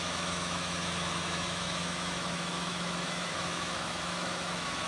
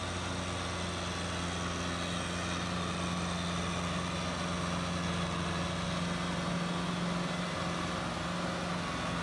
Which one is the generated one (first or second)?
first